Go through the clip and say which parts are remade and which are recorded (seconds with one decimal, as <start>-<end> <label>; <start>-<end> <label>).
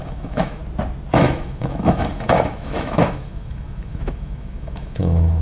0.0-0.6 remade; 0.6-1.1 recorded; 1.1-5.4 remade